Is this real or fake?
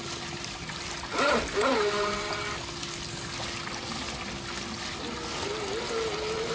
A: real